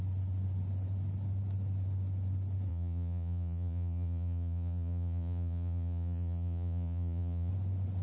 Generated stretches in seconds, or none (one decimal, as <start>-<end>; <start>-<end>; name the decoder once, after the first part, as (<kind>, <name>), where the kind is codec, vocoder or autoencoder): 2.7-7.5 (vocoder, Vocos)